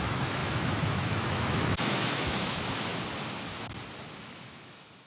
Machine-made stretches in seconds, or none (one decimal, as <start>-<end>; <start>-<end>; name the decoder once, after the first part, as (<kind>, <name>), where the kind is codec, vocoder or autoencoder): 0.0-2.9 (autoencoder, DAC-VAE); 4.2-5.1